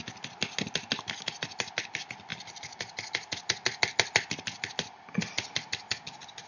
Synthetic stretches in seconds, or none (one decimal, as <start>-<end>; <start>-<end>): none